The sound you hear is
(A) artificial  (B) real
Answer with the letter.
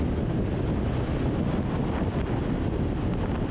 B